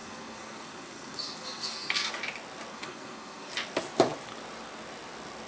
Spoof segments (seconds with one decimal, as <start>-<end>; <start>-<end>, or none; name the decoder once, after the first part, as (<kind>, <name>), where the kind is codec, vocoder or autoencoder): 0.0-2.1 (codec, SNAC); 2.7-3.5

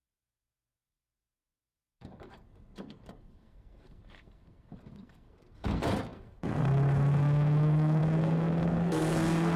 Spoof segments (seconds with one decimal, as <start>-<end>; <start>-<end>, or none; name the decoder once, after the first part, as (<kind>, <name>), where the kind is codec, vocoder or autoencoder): 0.0-9.6 (codec, SNAC)

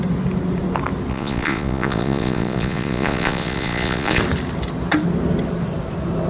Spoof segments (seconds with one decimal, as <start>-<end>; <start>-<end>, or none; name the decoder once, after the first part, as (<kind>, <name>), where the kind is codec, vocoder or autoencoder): 1.1-4.2 (vocoder, Vocos)

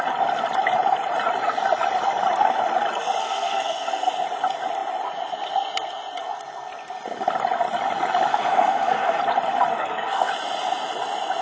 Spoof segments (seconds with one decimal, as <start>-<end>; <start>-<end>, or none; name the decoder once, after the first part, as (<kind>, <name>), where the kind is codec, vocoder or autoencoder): 3.2-4.1 (codec, SNAC); 8.3-9.2; 9.7-10.3

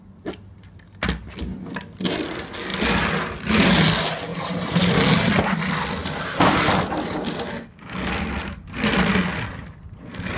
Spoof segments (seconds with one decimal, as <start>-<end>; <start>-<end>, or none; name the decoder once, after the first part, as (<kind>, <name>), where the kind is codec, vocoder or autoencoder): 4.3-4.9 (vocoder, BigVGAN v2); 6.0-6.7

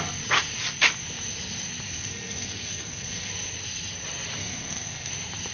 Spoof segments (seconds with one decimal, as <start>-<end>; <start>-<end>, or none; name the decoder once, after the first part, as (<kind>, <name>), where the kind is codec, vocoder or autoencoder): 1.9-3.3 (codec, SNAC); 4.4-5.1

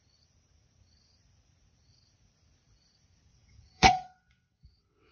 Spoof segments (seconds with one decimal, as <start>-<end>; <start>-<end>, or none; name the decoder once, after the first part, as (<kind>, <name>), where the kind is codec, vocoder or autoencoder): 3.3-5.1 (vocoder, WaveNeXt)

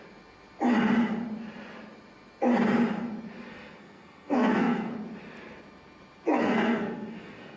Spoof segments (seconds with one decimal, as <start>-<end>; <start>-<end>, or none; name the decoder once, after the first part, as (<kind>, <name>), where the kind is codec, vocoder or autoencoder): 3.5-4.9 (codec, SNAC); 6.4-7.6